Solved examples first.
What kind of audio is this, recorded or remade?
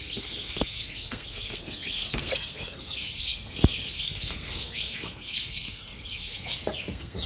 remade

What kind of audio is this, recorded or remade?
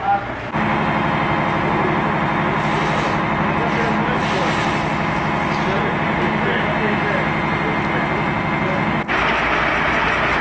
recorded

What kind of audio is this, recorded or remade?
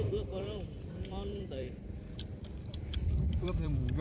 remade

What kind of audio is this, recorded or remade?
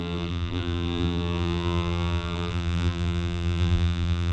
remade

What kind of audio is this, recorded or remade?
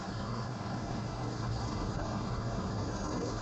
remade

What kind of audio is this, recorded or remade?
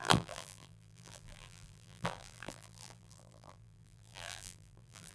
remade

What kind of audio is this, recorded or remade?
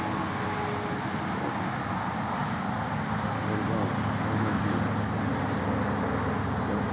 recorded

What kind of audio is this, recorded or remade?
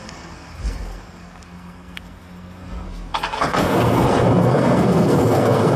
remade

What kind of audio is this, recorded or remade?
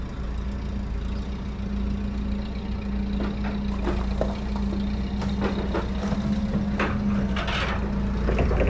recorded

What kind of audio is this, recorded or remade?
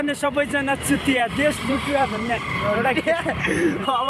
remade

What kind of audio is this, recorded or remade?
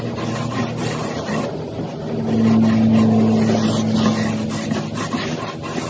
recorded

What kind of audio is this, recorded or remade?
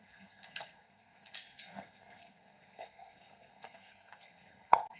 remade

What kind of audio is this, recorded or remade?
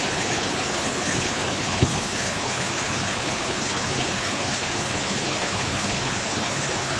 remade